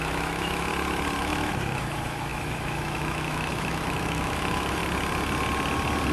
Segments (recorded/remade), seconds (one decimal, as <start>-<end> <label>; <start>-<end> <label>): 0.0-0.7 remade; 0.7-1.2 recorded; 1.2-4.8 remade; 4.8-6.1 recorded